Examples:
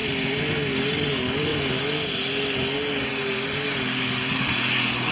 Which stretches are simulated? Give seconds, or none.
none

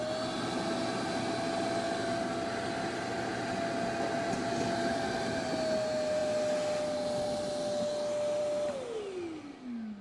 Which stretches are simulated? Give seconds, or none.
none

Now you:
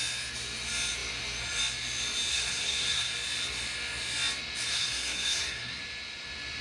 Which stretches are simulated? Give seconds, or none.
2.3-3.1 (codec, SNAC); 4.7-5.8

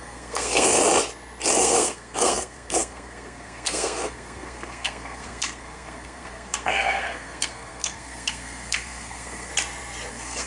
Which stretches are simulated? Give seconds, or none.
0.0-0.7 (codec, SNAC); 1.6-9.5; 10.1-10.5

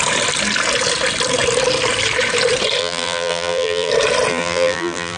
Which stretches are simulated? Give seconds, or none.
2.8-3.9 (vocoder, BigVGAN v2); 4.3-5.2

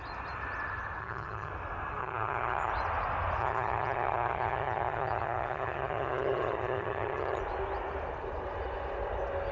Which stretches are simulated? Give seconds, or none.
1.0-1.5 (vocoder, HiFi-GAN); 2.0-2.7; 3.4-7.4